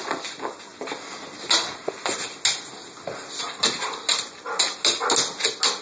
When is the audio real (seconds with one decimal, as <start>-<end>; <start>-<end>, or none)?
0.0-5.8